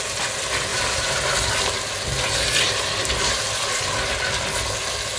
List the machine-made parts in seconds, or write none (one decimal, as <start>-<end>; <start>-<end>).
0.7-1.3